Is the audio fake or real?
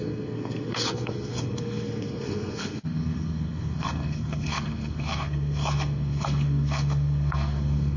fake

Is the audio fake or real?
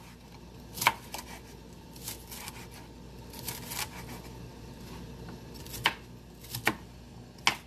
real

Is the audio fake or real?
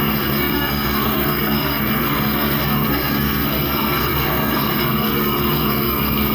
fake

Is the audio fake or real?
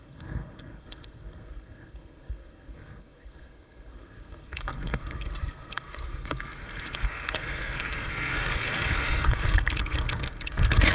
fake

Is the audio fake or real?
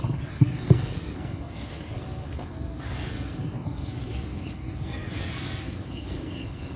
fake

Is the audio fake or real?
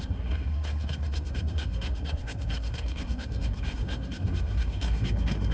fake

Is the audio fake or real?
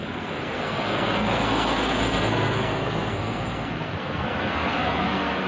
fake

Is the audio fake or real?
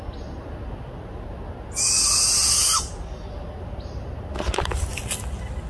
real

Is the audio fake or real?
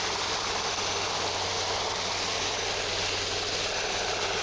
real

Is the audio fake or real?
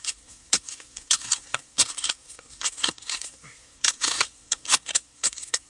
fake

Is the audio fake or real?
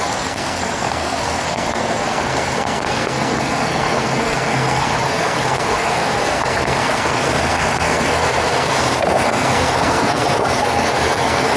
fake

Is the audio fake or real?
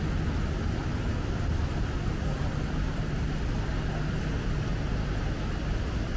real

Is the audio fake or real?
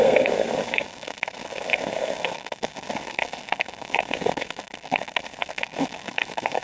fake